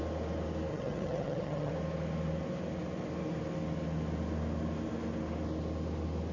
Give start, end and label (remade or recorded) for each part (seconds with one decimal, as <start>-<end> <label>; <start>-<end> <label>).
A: 0.0-0.7 recorded; 0.7-1.7 remade; 1.7-6.3 recorded